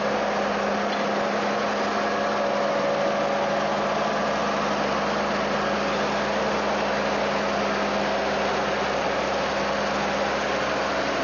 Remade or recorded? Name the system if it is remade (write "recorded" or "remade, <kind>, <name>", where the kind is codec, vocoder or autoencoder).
recorded